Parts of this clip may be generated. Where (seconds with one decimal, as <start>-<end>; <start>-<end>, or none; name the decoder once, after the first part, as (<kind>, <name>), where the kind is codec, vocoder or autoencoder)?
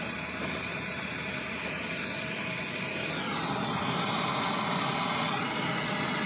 none